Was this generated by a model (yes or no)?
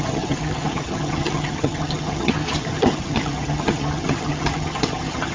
yes